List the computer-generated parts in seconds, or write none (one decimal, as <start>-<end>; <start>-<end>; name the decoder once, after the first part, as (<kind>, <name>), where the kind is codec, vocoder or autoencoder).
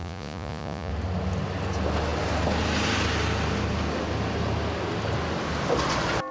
0.0-0.9 (vocoder, Vocos)